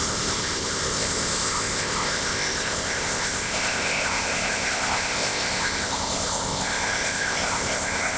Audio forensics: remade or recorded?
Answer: remade